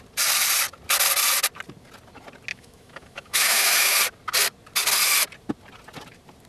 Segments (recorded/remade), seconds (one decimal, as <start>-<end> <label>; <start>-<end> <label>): 0.0-2.5 recorded; 2.5-4.0 remade; 4.0-6.5 recorded